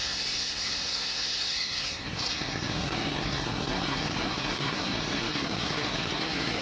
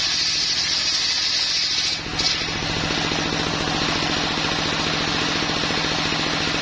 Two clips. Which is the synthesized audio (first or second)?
first